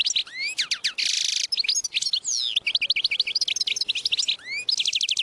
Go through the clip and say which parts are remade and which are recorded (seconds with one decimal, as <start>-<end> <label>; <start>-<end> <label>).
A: 0.0-5.2 recorded